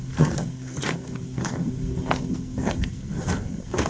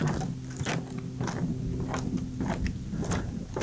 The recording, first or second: second